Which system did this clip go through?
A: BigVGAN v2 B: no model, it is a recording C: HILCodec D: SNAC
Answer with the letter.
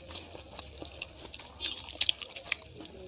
B